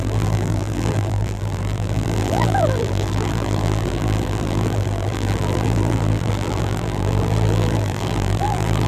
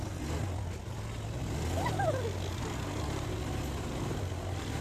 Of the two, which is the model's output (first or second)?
first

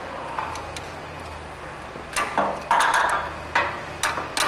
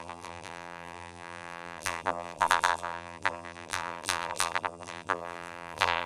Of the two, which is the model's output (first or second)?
second